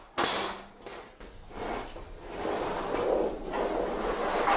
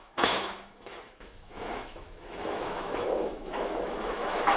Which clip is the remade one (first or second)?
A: second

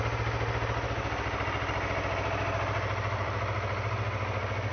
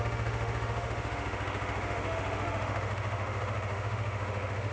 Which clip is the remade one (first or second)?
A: second